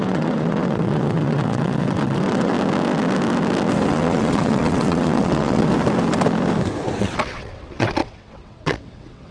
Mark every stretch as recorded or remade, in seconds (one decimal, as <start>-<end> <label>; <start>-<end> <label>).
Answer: 0.0-2.5 remade; 2.5-3.9 recorded; 3.9-5.7 remade; 5.7-7.0 recorded; 7.0-9.3 remade